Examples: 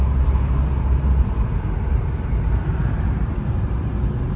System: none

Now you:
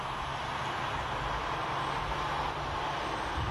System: none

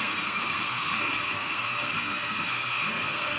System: codec, SNAC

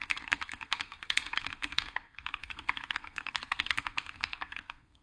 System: codec, SNAC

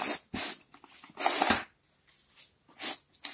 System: none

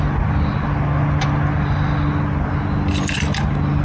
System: none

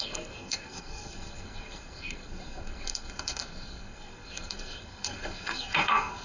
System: codec, SNAC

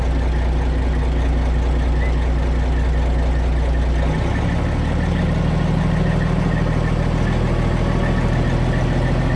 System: none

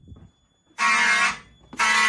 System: none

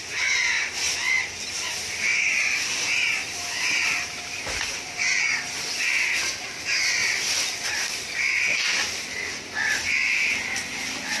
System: none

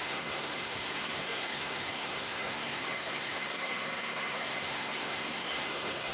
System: codec, SNAC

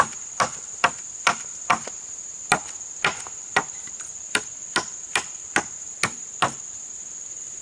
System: none